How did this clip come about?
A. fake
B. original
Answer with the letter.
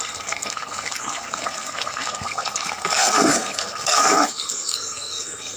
A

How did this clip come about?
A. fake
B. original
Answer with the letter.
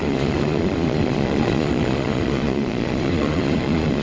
A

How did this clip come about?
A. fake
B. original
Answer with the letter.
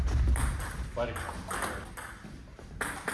B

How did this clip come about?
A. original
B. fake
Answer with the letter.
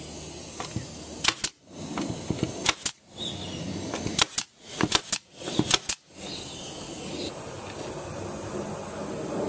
A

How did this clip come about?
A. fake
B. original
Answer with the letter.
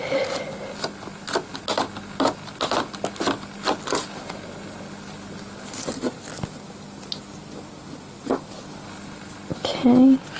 B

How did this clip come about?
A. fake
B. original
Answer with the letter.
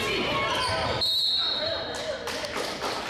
B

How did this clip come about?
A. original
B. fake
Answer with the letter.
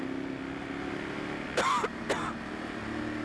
A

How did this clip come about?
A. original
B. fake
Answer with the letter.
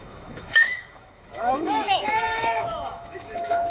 B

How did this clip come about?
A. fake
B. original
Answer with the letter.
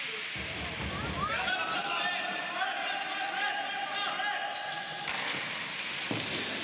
B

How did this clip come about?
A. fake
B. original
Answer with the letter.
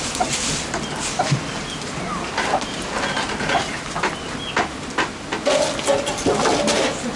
B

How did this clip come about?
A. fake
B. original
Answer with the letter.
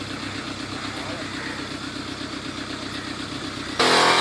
B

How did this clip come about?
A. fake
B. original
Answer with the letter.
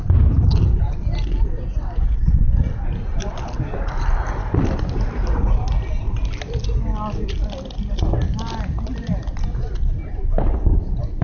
B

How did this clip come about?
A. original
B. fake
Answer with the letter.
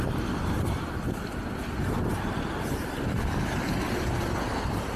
A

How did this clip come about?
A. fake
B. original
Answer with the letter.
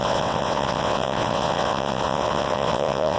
A